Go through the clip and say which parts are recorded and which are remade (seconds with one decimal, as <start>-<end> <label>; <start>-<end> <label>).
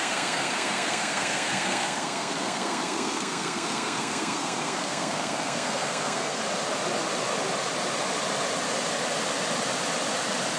0.0-6.4 remade; 6.4-10.6 recorded